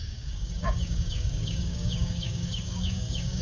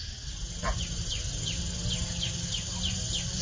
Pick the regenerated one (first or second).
first